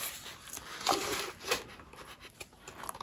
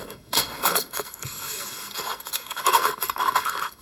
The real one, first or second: first